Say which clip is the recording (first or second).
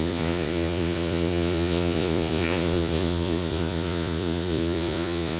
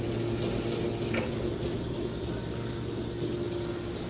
second